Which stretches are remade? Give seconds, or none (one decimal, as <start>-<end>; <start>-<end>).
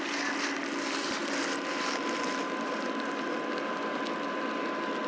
0.0-5.1